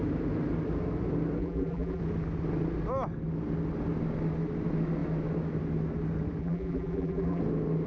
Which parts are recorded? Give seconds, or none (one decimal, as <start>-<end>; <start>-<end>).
0.0-1.4; 2.0-6.4; 7.4-7.9